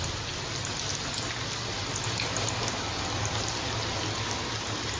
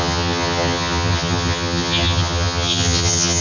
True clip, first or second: first